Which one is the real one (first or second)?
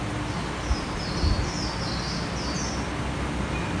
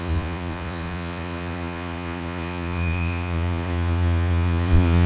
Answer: first